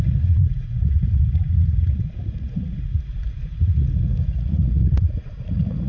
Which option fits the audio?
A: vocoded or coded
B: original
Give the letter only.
A